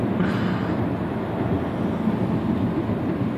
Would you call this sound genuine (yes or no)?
yes